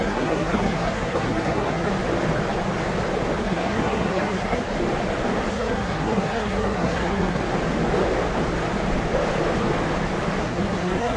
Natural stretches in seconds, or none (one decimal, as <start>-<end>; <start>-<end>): 1.9-3.4; 4.6-5.5; 7.4-10.4